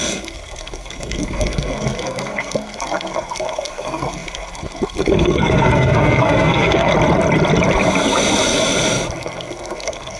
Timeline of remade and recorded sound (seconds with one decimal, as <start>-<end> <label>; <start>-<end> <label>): 0.0-6.9 remade; 6.9-9.2 recorded; 9.2-10.2 remade